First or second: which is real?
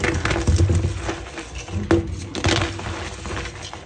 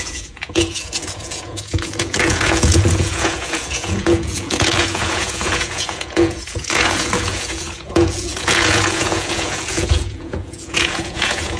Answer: first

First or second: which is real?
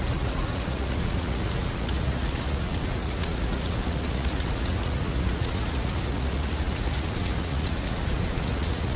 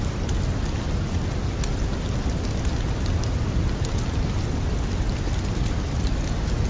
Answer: second